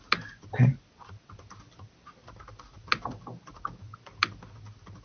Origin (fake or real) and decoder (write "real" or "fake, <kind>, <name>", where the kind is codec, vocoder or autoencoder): real